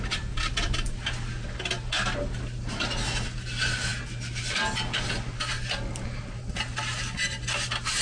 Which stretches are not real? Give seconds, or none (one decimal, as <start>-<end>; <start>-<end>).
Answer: none